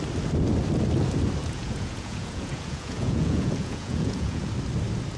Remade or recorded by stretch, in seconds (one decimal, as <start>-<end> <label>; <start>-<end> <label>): 0.0-1.4 recorded; 1.4-4.5 remade; 4.5-5.2 recorded